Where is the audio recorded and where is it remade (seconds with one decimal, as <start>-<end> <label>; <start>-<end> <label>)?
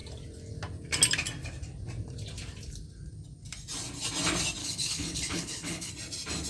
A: 0.0-4.6 recorded; 4.6-5.9 remade; 5.9-6.5 recorded